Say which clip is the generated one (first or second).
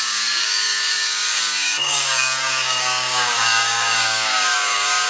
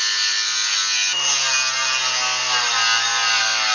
first